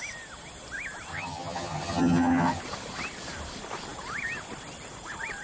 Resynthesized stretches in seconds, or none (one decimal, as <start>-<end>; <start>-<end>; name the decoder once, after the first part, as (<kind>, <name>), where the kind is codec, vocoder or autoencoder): 1.1-2.6 (vocoder, HiFi-GAN)